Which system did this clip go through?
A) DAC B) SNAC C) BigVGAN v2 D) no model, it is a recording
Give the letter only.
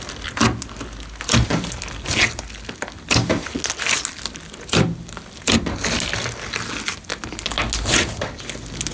D